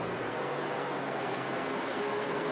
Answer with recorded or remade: remade